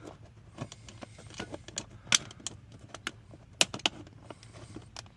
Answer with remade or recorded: recorded